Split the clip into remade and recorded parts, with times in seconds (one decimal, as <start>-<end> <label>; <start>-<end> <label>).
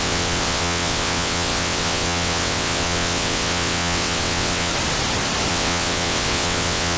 0.0-4.7 remade; 4.7-5.5 recorded; 5.5-7.0 remade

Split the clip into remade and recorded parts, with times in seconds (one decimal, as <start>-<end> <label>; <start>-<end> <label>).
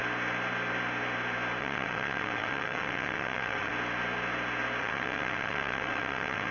0.0-1.6 recorded; 1.6-3.7 remade; 3.7-4.8 recorded; 4.8-6.5 remade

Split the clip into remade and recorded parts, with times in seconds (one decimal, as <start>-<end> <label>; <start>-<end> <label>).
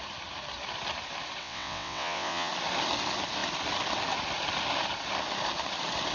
0.0-1.4 recorded; 1.4-2.5 remade; 2.5-6.1 recorded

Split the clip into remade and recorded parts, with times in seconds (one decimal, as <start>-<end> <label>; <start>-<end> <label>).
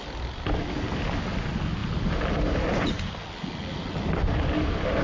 0.0-5.0 recorded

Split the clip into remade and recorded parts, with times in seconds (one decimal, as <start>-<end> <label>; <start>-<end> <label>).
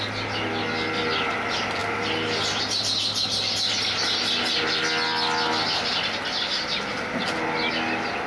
0.0-8.3 recorded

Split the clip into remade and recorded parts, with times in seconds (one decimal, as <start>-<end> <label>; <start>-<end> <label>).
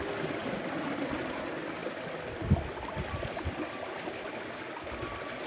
0.0-5.5 recorded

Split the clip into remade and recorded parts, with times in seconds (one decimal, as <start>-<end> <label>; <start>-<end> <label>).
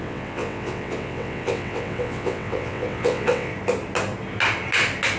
0.0-3.5 remade; 3.5-5.2 recorded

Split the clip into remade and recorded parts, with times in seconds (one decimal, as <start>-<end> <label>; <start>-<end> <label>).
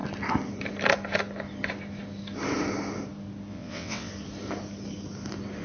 0.0-3.5 recorded; 3.5-4.1 remade; 4.1-5.6 recorded